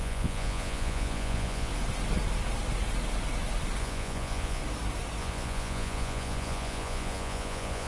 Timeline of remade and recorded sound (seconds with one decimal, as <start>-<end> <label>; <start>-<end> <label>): 0.0-1.7 remade; 1.7-3.8 recorded; 3.8-4.6 remade; 4.6-5.2 recorded; 5.2-7.9 remade